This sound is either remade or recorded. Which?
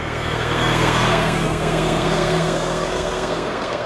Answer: remade